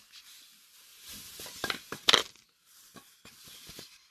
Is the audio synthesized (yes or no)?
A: no